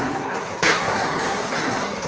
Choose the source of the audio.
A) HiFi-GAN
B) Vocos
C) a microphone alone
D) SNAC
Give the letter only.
D